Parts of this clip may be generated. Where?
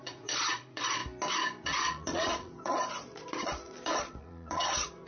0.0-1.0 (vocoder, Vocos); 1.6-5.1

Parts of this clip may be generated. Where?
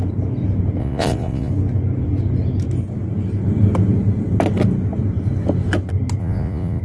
0.8-1.5 (vocoder, Vocos); 6.2-6.8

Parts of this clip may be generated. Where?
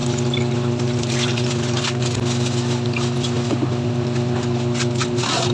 none